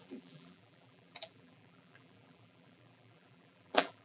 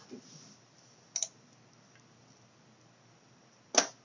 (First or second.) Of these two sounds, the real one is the second